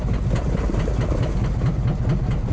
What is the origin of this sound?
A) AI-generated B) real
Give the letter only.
B